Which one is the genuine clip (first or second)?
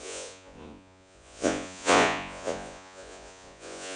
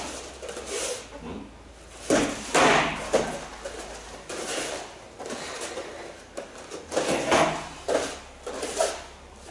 second